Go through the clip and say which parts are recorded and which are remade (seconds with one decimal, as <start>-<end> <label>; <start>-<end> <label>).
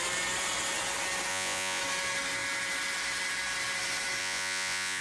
0.0-1.3 recorded; 1.3-1.8 remade; 1.8-4.2 recorded; 4.2-5.0 remade